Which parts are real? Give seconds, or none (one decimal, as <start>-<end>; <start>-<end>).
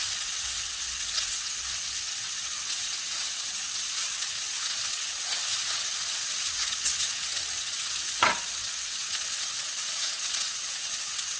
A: none